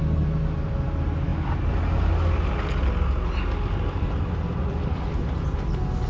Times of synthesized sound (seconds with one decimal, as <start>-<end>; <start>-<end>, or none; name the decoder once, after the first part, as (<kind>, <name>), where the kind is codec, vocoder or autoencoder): none